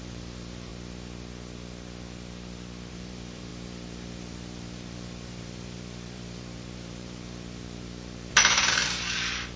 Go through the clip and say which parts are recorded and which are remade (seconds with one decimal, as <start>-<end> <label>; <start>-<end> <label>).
0.0-0.7 remade; 0.7-2.9 recorded; 2.9-9.6 remade